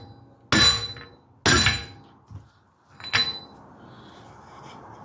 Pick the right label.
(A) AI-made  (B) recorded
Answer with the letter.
B